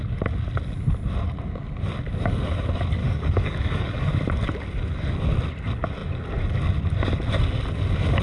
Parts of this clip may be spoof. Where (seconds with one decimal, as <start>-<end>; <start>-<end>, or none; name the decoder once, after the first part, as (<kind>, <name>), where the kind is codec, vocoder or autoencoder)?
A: 3.0-4.1 (codec, DAC)